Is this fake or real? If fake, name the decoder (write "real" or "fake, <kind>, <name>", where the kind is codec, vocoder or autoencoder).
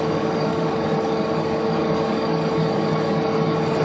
fake, codec, DAC